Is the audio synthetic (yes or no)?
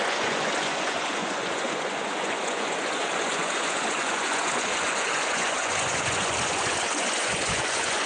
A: yes